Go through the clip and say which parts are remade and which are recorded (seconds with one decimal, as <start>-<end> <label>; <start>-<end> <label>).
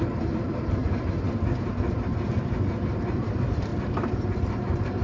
0.0-0.8 remade; 0.8-2.3 recorded; 2.3-3.7 remade; 3.7-4.2 recorded; 4.2-5.0 remade